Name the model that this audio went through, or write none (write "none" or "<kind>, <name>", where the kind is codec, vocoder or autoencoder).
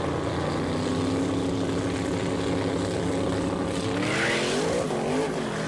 none